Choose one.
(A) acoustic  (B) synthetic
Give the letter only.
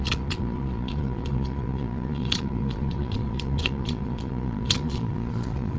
B